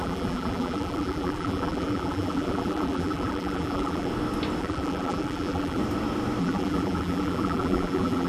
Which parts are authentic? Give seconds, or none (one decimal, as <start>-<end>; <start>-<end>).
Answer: 4.1-4.6; 5.8-6.4